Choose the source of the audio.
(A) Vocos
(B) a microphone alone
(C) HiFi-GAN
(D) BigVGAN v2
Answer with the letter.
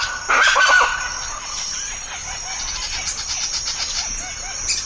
B